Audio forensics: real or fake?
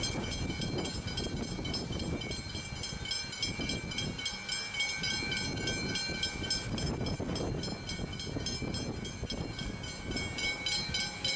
real